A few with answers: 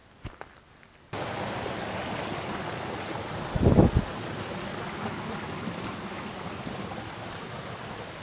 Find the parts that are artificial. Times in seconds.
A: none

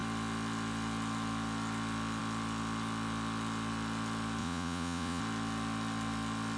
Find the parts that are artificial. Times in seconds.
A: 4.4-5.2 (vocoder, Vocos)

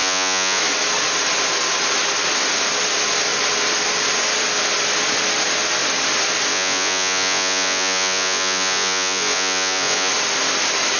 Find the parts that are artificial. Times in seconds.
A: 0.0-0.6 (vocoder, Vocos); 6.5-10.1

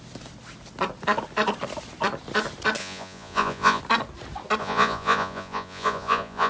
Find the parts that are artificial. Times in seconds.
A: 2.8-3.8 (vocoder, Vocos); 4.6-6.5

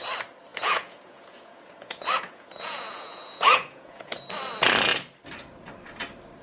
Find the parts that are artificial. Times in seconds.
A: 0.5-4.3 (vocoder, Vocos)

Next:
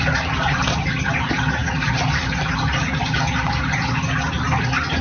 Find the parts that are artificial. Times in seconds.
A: none